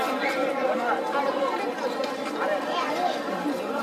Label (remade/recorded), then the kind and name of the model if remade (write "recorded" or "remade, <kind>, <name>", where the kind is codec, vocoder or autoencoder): recorded